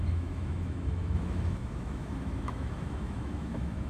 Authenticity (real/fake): fake